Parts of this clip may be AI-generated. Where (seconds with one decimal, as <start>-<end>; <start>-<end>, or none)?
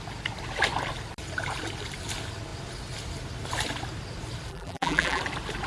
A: 4.5-5.2